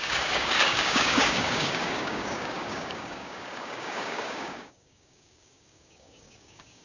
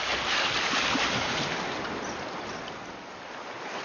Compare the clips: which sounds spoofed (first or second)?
first